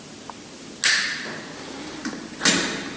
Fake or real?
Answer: real